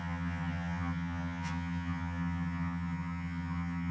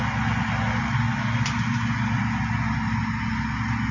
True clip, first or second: second